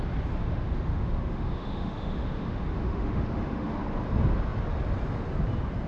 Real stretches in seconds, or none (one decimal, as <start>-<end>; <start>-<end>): 0.0-0.4; 3.8-5.9